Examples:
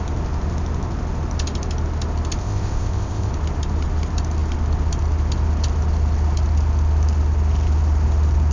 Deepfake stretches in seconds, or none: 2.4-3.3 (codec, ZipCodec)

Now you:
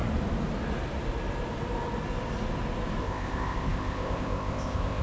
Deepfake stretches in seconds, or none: 3.0-5.0 (codec, ZipCodec)